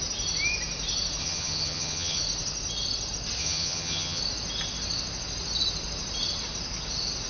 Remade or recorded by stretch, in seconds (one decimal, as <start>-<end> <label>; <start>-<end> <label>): 0.0-1.2 recorded; 1.2-2.2 remade; 2.2-3.4 recorded; 3.4-4.2 remade; 4.2-7.3 recorded